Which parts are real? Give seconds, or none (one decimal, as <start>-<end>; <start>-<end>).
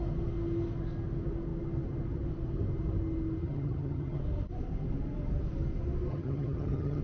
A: 0.0-3.4; 4.2-6.1